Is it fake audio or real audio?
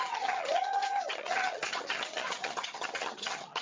fake